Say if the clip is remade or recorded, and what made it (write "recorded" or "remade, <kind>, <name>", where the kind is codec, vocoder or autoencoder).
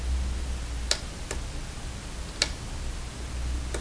recorded